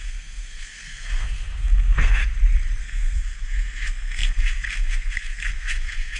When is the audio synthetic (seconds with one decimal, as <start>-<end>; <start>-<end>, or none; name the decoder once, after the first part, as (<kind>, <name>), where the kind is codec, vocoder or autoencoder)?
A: 0.0-2.2 (codec, SNAC); 2.8-6.2